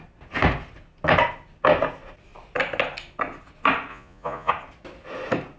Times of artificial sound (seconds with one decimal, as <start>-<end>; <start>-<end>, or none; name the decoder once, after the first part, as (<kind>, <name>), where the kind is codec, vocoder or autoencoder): 3.9-4.5 (vocoder, Vocos)